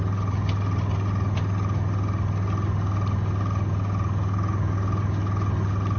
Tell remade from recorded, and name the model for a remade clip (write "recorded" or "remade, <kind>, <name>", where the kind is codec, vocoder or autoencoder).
recorded